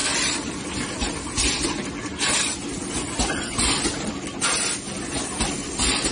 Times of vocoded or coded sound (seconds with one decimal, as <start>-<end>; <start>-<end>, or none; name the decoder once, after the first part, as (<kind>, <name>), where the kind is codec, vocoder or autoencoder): none

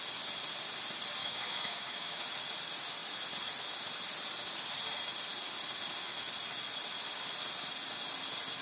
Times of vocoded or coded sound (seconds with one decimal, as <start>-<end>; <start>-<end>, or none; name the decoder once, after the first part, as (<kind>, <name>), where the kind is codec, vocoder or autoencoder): 1.2-2.2 (autoencoder, DAC-VAE)

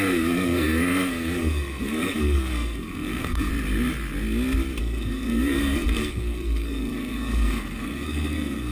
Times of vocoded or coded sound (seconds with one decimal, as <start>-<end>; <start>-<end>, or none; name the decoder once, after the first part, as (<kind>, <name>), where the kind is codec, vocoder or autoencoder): 0.0-3.5 (codec, SNAC); 4.8-8.7

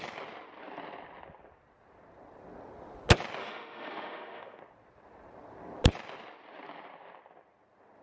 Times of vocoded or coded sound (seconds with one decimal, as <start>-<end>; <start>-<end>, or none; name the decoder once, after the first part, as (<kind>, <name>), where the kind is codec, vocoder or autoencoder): 3.4-4.6 (autoencoder, DAC-VAE)

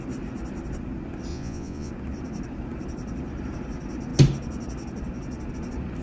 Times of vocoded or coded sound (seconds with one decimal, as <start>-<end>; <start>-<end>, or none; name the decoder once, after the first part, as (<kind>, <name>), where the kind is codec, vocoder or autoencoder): 1.3-1.9 (vocoder, Vocos)

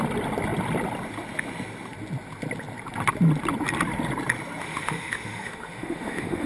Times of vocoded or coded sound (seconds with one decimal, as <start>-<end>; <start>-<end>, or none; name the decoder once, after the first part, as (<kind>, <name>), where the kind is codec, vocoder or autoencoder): 4.6-6.5 (autoencoder, DAC-VAE)